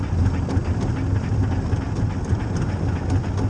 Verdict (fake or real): real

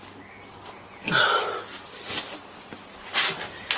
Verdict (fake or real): real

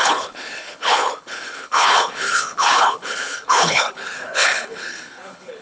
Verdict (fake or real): fake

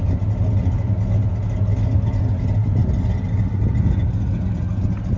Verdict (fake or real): real